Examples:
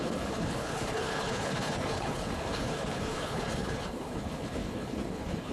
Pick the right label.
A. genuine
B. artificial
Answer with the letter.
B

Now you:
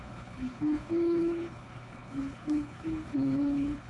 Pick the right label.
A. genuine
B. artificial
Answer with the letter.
B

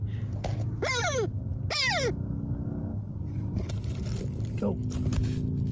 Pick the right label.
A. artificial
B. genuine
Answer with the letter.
B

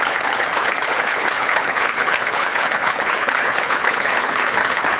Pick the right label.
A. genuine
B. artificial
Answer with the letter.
B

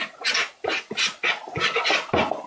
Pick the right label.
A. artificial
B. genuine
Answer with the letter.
B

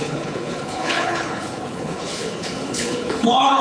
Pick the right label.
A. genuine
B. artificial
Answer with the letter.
B